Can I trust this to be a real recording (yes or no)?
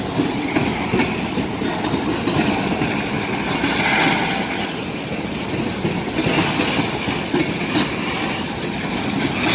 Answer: yes